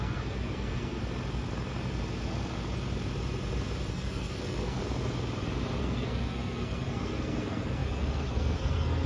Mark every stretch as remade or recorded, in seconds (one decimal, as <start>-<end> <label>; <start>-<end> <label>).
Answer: 0.0-1.0 remade; 1.0-3.9 recorded; 3.9-4.8 remade; 4.8-5.8 recorded; 5.8-9.1 remade